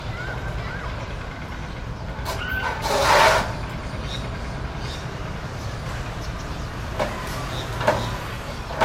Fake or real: real